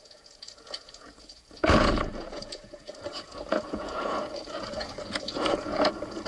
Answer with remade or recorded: remade